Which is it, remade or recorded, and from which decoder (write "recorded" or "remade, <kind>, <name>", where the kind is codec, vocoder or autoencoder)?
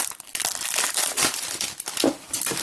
recorded